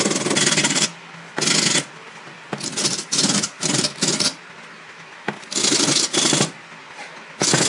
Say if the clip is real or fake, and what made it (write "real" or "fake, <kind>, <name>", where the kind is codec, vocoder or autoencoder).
real